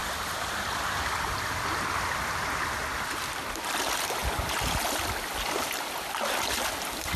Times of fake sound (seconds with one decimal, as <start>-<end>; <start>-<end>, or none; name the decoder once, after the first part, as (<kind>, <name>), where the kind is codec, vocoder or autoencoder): 0.0-2.6 (vocoder, BigVGAN v2)